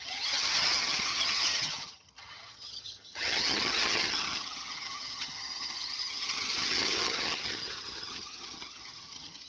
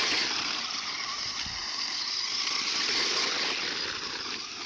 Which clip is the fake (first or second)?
first